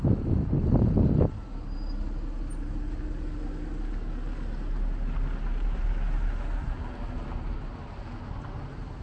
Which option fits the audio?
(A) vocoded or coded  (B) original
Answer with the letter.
B